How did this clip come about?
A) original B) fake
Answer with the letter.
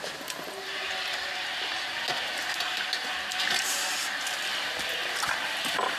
A